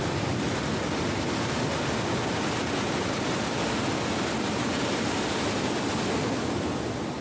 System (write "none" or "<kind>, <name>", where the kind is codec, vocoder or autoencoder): none